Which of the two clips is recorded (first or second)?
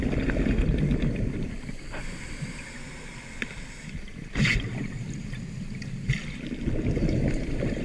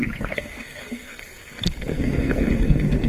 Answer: first